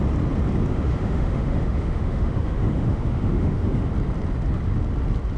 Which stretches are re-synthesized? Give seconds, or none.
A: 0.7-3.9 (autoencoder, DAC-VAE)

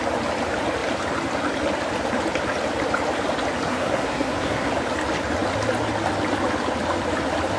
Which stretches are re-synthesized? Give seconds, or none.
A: 3.7-4.7 (codec, SNAC)

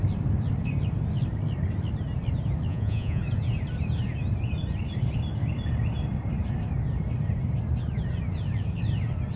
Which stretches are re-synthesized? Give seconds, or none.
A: 2.7-3.2 (vocoder, Vocos)